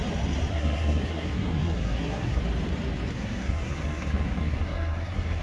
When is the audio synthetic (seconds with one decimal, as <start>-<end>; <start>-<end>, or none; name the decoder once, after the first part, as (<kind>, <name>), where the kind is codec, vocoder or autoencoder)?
0.5-2.4 (codec, SNAC); 3.1-5.4